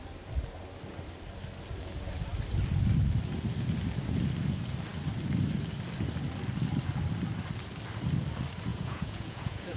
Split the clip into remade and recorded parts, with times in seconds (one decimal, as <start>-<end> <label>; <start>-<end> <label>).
0.0-8.7 recorded; 8.7-9.8 remade